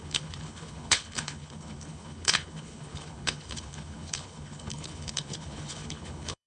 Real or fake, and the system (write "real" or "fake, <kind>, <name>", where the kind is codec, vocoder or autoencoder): fake, codec, HILCodec